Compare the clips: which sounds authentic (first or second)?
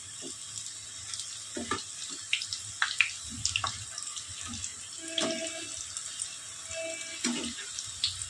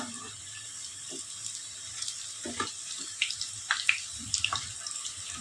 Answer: first